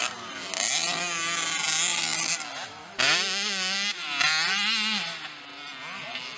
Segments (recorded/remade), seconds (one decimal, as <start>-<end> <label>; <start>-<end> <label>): 0.0-6.4 recorded